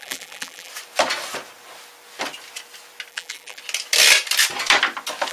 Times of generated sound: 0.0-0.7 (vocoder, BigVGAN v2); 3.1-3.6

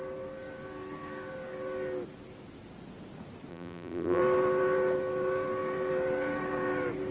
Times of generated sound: 3.5-4.2 (vocoder, BigVGAN v2)

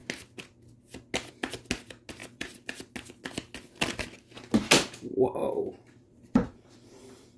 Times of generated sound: 2.2-2.9 (vocoder, BigVGAN v2); 5.4-7.4